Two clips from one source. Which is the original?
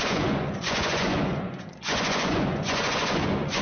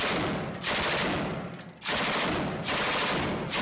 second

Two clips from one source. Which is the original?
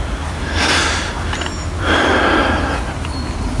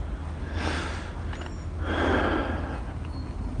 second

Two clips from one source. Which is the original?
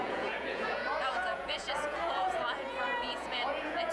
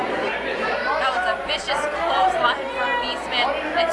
second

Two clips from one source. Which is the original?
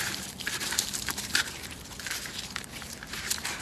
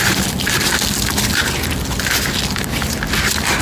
second